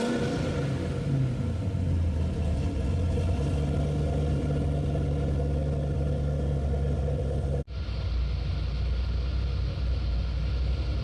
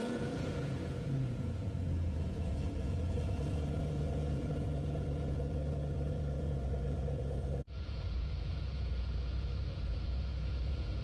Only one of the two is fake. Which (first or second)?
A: second